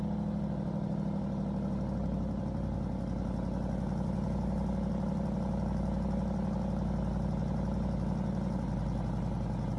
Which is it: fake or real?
real